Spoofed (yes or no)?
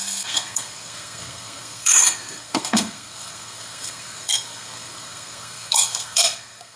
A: yes